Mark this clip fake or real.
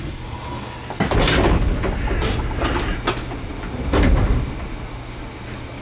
real